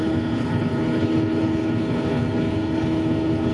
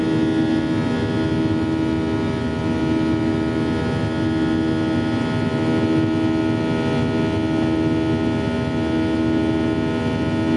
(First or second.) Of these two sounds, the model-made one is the first